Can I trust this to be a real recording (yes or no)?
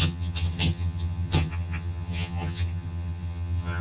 no